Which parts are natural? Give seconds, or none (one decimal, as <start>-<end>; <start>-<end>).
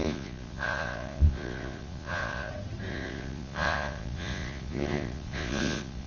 2.5-2.9